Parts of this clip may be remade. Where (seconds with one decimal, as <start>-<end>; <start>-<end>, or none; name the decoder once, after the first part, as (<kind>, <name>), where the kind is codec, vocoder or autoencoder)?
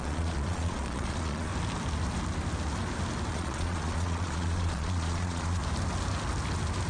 0.0-1.5 (vocoder, Vocos); 3.3-5.6